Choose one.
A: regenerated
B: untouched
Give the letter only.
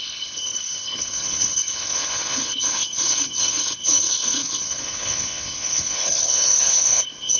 A